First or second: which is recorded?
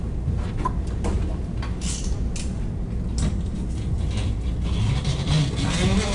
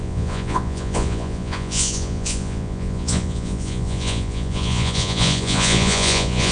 first